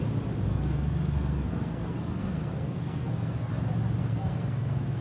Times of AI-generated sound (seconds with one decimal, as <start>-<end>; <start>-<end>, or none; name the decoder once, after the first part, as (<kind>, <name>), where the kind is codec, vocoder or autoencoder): 0.5-3.5 (codec, SNAC); 4.0-5.0